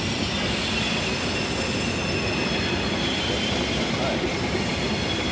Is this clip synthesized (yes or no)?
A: no